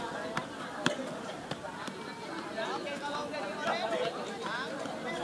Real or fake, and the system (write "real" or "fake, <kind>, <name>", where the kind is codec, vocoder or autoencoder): real